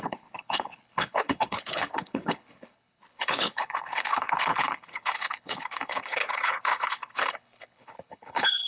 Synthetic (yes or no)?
yes